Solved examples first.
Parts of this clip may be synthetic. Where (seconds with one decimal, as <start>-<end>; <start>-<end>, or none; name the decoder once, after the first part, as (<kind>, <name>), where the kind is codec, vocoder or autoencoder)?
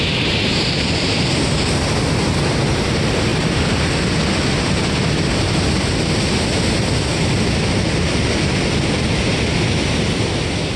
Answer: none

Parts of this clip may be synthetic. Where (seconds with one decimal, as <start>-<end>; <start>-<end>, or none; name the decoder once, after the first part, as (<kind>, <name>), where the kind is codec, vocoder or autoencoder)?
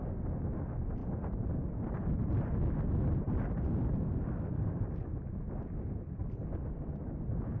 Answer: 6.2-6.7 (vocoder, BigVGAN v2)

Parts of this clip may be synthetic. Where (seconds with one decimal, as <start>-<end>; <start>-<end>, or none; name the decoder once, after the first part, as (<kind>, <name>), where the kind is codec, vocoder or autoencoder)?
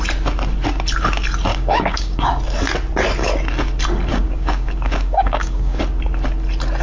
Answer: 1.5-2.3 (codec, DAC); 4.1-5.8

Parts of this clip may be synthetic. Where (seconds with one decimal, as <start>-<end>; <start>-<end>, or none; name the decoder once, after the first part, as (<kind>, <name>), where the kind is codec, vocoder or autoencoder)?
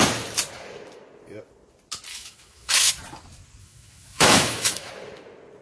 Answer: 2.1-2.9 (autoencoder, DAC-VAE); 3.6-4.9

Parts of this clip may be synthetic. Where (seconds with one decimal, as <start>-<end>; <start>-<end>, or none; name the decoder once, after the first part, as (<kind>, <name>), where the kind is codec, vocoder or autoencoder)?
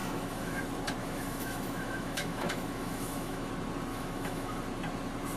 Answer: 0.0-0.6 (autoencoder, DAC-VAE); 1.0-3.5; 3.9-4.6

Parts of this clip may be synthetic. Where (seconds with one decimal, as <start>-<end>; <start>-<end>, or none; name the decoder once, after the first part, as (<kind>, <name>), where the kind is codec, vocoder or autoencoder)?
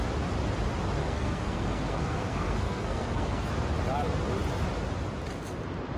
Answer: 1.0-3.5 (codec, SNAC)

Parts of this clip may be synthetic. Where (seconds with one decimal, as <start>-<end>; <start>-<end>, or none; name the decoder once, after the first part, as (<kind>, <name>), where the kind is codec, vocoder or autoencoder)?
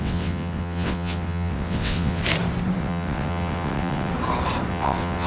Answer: 0.0-2.2 (vocoder, WaveNeXt); 2.8-4.1; 4.7-5.3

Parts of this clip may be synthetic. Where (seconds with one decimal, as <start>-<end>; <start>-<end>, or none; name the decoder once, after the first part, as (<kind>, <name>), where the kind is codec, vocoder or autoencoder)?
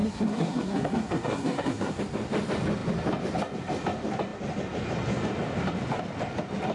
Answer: 0.0-2.0 (codec, SNAC)